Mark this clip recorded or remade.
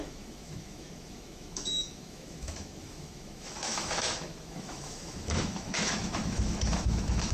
remade